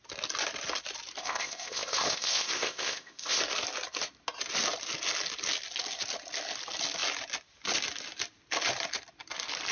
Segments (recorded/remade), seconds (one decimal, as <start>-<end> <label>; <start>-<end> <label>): 0.0-1.2 recorded; 1.2-3.4 remade; 3.4-9.7 recorded